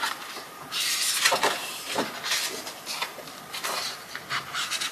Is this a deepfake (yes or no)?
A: yes